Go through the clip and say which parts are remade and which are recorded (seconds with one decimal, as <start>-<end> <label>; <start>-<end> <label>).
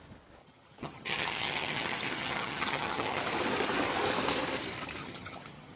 0.0-0.4 recorded; 0.4-3.2 remade; 3.2-5.0 recorded; 5.0-5.8 remade